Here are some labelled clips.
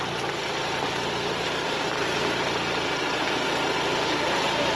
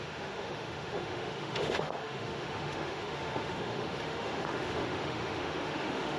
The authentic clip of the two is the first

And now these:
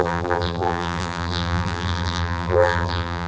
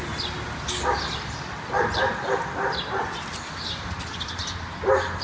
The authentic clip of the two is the second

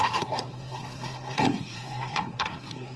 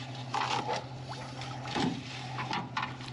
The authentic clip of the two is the second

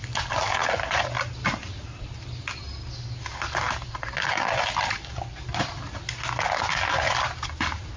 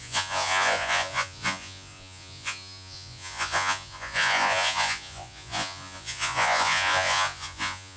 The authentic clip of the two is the first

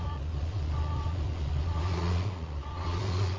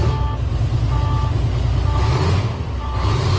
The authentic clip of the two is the second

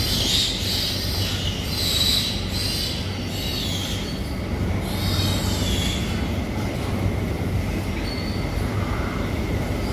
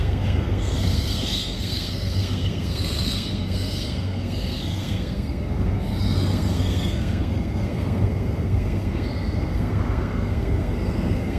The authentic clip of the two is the first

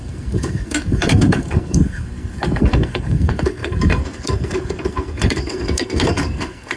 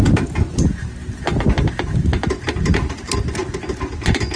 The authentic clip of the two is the second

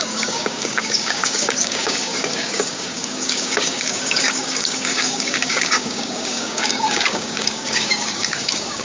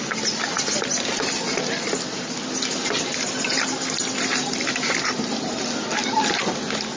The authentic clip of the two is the second